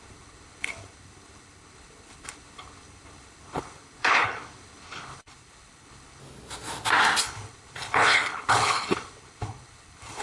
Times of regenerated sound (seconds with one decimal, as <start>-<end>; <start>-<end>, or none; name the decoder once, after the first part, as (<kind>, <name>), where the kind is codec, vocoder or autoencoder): 0.0-6.2 (codec, HILCodec); 7.2-10.2